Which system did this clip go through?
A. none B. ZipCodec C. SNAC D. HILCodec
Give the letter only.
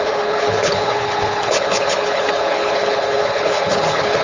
D